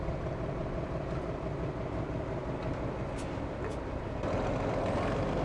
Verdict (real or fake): real